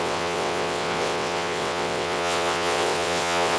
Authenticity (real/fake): fake